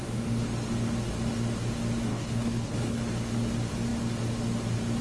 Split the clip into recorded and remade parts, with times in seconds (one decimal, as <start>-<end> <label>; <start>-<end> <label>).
0.0-2.1 recorded; 2.1-3.0 remade; 3.0-5.0 recorded